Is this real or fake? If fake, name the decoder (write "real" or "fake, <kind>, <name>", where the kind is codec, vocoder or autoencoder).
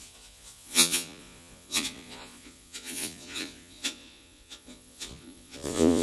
fake, vocoder, Vocos